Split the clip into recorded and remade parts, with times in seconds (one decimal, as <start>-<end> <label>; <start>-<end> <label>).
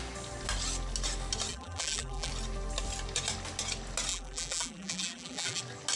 0.0-1.5 recorded; 1.5-2.3 remade; 2.3-4.1 recorded; 4.1-5.6 remade; 5.6-6.0 recorded